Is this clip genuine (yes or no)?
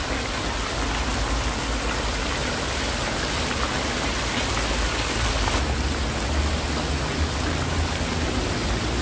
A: yes